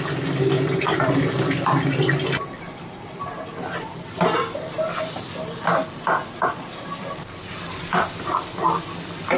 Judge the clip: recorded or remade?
recorded